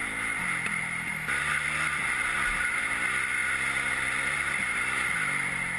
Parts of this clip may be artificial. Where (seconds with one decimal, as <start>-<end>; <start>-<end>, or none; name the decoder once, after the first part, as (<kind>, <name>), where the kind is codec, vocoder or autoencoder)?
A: none